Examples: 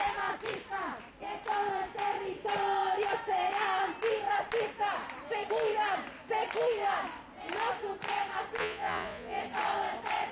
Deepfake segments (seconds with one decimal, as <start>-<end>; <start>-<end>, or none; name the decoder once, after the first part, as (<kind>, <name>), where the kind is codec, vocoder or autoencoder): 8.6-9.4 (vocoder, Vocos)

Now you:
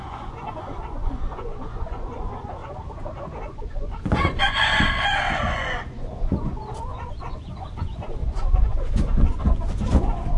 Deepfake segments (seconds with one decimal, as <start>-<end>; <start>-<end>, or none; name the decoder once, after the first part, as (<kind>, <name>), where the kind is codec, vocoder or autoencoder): 0.0-2.6 (vocoder, Vocos); 3.4-10.4

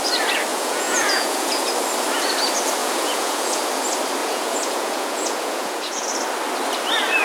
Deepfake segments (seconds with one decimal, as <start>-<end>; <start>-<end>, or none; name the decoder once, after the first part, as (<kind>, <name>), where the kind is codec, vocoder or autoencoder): 0.5-1.7 (vocoder, Vocos); 2.8-3.6; 4.2-6.1

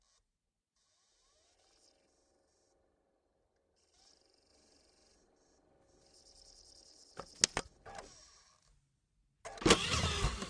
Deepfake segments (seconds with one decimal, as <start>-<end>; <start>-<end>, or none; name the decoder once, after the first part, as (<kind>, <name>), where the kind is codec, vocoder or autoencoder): none

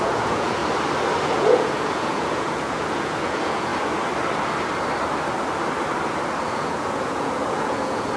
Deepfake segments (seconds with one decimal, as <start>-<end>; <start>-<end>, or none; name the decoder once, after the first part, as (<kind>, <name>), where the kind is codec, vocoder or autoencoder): 0.0-0.6 (vocoder, Vocos); 1.2-3.7; 6.5-8.2

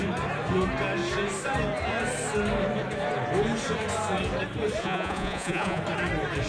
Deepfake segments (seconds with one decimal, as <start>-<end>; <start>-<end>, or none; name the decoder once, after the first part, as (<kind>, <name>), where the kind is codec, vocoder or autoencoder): 4.8-5.8 (vocoder, Vocos)

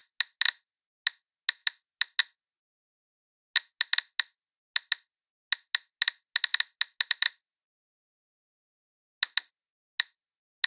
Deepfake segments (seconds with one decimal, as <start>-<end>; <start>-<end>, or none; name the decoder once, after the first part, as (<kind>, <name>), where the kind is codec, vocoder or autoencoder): none